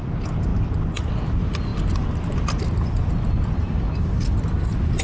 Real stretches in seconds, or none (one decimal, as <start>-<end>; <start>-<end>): 0.0-5.0